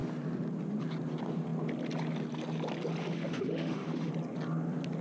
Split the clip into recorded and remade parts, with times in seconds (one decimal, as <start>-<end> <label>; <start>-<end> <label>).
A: 0.0-3.0 recorded; 3.0-4.1 remade; 4.1-5.0 recorded